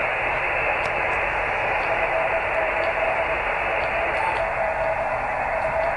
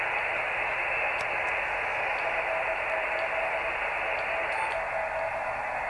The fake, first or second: first